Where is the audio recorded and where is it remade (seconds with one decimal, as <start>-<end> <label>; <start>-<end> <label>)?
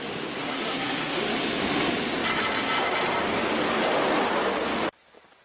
0.0-0.4 recorded; 0.4-1.2 remade; 1.2-5.4 recorded